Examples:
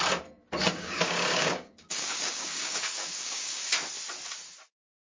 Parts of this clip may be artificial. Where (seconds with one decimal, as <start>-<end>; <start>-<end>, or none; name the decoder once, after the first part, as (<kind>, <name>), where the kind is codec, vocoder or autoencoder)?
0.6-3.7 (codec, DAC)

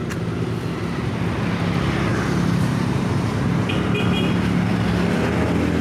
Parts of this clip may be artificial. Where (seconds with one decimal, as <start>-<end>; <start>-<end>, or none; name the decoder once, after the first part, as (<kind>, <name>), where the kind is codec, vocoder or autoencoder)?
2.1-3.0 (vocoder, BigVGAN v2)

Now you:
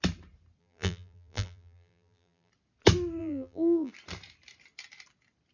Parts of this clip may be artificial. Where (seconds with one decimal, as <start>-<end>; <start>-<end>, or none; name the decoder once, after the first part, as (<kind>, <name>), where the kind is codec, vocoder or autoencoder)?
0.6-2.5 (vocoder, BigVGAN v2); 3.2-3.9